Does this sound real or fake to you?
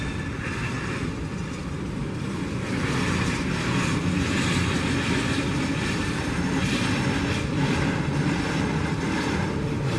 fake